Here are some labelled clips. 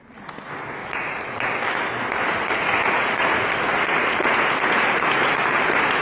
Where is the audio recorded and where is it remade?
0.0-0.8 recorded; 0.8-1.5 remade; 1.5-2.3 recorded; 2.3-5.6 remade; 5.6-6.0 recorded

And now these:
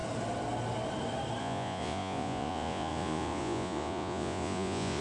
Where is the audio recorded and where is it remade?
0.0-1.4 recorded; 1.4-5.0 remade

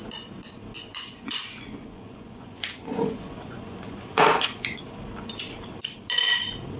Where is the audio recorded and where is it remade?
0.0-0.7 recorded; 0.7-4.8 remade; 4.8-6.8 recorded

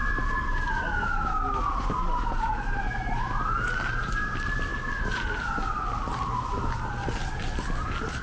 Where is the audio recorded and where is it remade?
0.0-8.2 recorded

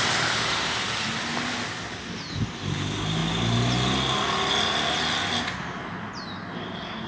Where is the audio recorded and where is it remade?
0.0-7.1 recorded